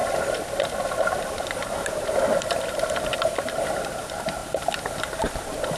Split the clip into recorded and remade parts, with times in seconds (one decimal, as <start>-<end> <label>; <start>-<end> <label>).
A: 0.0-5.8 remade